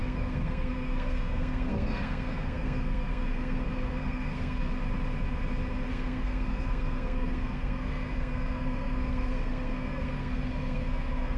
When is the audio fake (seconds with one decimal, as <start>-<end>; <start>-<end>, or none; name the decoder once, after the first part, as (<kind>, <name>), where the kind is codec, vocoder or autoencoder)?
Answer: 0.0-4.7 (codec, SNAC); 5.9-11.4